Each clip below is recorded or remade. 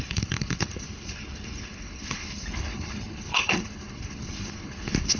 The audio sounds remade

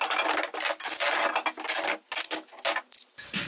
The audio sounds recorded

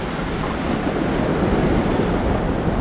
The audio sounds recorded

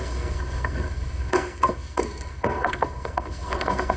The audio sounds remade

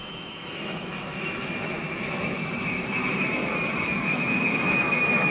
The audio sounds remade